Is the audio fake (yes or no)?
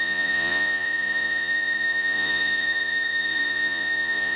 yes